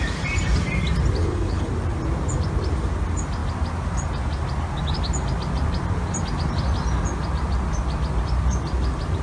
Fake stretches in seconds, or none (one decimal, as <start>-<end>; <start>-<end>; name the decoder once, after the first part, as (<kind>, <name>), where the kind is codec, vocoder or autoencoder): 1.2-1.7 (codec, HILCodec)